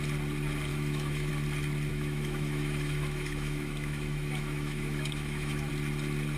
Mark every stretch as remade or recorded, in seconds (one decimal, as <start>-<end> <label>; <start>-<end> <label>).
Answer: 0.0-0.7 recorded; 0.7-1.3 remade; 1.3-1.9 recorded; 1.9-5.7 remade; 5.7-6.4 recorded